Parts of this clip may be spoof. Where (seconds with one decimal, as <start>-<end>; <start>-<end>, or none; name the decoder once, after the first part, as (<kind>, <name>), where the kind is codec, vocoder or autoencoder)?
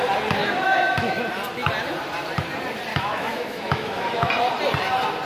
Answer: 0.4-1.3 (autoencoder, DAC-VAE); 2.9-4.3